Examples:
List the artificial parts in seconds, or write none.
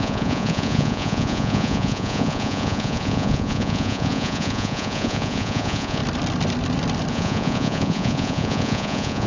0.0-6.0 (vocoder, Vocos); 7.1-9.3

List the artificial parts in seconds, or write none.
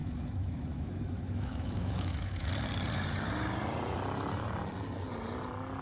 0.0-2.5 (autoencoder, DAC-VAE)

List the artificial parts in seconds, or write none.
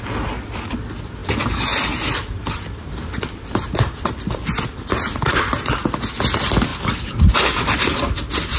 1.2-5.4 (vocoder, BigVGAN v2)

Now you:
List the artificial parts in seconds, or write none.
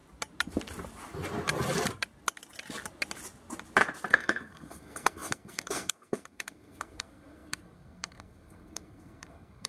4.1-9.7 (codec, SNAC)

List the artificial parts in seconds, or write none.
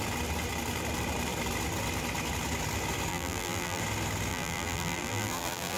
3.1-3.8 (vocoder, BigVGAN v2); 4.3-5.8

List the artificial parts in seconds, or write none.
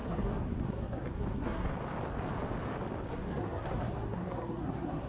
0.0-1.7 (codec, SNAC); 3.1-5.1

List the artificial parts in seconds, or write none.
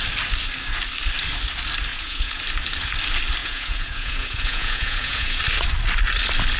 1.9-2.4 (vocoder, Vocos); 3.4-5.4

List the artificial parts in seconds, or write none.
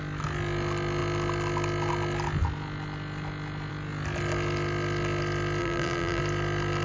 5.6-6.2 (vocoder, BigVGAN v2)